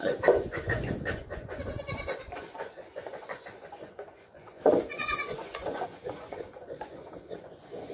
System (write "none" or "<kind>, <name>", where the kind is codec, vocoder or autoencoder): vocoder, Vocos